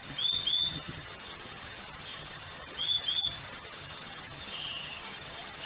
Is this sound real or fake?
fake